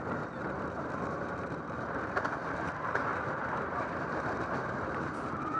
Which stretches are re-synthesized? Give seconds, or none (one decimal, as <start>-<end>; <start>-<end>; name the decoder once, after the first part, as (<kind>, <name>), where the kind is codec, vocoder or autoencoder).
0.0-5.6 (vocoder, BigVGAN v2)